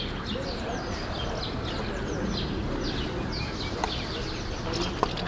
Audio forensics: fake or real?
real